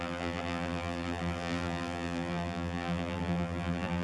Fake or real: fake